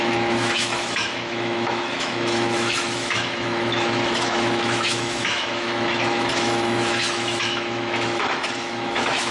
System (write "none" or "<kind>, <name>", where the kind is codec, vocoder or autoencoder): autoencoder, DAC-VAE